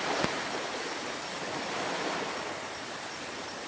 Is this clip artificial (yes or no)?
yes